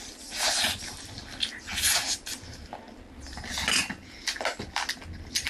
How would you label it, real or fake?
real